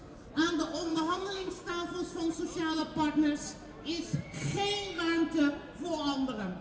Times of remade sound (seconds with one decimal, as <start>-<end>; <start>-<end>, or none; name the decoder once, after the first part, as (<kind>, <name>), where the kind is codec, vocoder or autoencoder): 0.9-1.7 (codec, DAC)